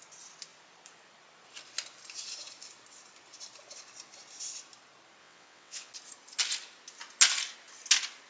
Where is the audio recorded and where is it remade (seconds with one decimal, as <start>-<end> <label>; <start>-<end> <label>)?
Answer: 0.0-5.2 recorded; 5.2-5.9 remade; 5.9-8.3 recorded

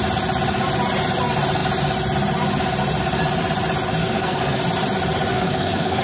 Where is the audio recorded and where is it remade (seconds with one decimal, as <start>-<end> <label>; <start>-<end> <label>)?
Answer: 0.0-4.0 recorded; 4.0-4.6 remade; 4.6-5.3 recorded; 5.3-6.0 remade

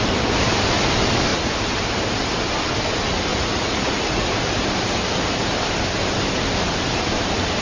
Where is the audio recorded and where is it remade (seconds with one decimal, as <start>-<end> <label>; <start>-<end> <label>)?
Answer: 0.0-3.3 recorded; 3.3-4.3 remade; 4.3-7.6 recorded

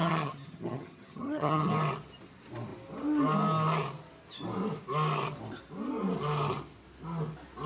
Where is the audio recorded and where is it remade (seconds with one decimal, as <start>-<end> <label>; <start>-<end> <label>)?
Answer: 0.0-1.7 remade; 1.7-7.7 recorded